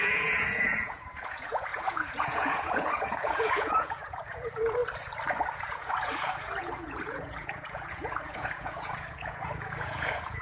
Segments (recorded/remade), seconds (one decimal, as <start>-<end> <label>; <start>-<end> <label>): 0.0-4.8 remade; 4.8-5.4 recorded; 5.4-10.4 remade